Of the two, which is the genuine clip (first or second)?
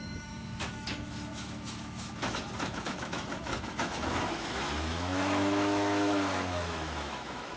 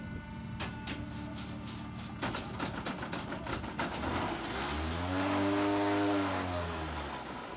second